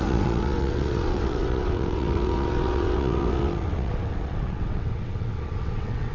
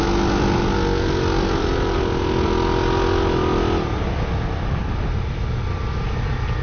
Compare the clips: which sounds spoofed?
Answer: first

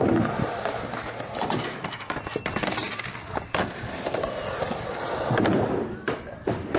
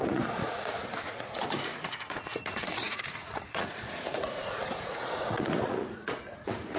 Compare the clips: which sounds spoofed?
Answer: second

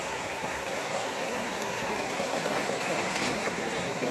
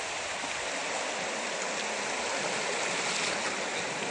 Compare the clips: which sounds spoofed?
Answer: first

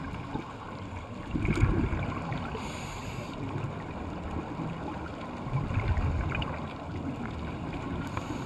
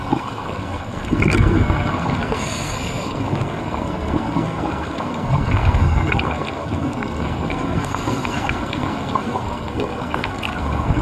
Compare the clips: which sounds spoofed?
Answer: second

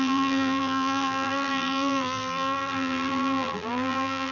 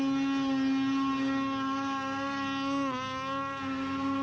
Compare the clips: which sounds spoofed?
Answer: first